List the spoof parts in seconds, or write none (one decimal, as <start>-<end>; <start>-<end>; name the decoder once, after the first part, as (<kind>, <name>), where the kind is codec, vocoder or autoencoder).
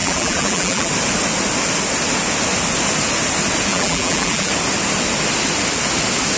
0.0-0.9 (vocoder, BigVGAN v2); 3.7-4.5